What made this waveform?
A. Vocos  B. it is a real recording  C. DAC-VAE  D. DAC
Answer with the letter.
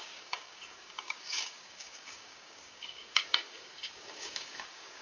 D